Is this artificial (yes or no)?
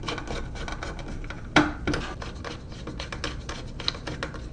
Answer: no